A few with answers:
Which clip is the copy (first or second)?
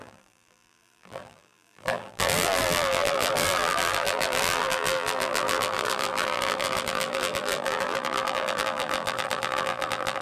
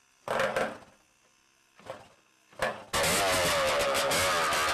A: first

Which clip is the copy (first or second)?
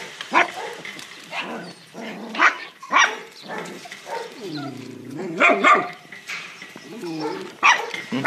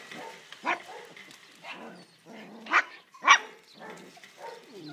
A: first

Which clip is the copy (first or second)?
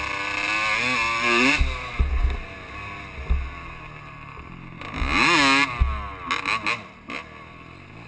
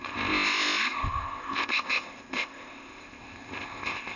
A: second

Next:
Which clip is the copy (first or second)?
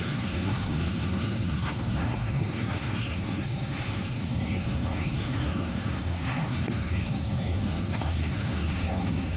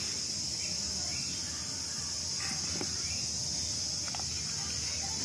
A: first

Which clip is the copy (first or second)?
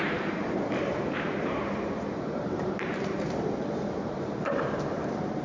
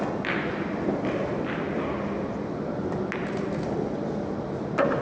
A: first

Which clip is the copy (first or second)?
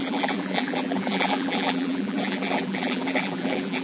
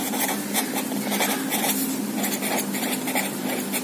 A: first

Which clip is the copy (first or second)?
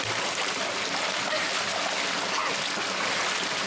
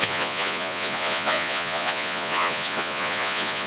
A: second